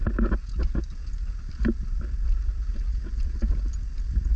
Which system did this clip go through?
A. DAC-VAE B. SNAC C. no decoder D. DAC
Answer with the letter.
C